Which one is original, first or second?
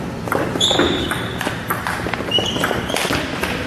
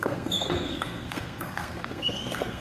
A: first